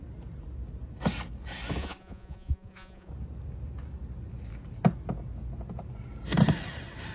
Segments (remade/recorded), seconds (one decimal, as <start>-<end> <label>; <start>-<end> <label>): 0.0-1.8 recorded; 1.8-3.1 remade; 3.1-7.1 recorded